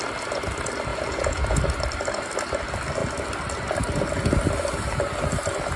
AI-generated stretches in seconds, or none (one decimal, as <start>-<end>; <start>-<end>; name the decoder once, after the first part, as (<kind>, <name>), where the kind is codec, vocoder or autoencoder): 0.9-1.6 (vocoder, Vocos)